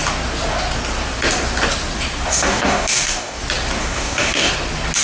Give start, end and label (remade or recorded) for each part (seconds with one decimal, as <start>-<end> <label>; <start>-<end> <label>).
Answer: 0.0-2.3 recorded; 2.3-3.4 remade; 3.4-3.8 recorded; 3.8-4.5 remade; 4.5-5.0 recorded

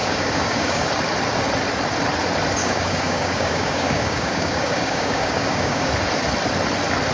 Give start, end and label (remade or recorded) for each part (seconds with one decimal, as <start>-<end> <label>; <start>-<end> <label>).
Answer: 0.0-0.9 remade; 0.9-2.6 recorded; 2.6-5.9 remade; 5.9-7.1 recorded

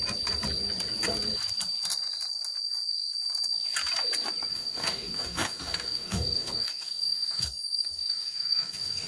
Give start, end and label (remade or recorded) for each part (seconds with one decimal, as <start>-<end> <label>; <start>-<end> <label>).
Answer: 0.0-4.5 recorded; 4.5-9.1 remade

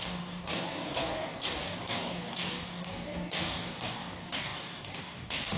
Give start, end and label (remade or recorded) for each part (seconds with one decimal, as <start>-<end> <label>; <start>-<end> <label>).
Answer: 0.0-5.6 remade

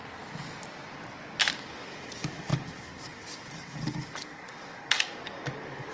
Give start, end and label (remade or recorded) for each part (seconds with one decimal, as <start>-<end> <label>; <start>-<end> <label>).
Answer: 0.0-1.5 recorded; 1.5-5.9 remade

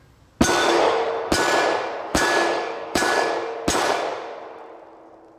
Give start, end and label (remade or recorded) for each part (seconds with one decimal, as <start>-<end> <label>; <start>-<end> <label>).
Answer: 0.0-0.6 recorded; 0.6-1.1 remade; 1.1-2.1 recorded; 2.1-3.3 remade; 3.3-5.4 recorded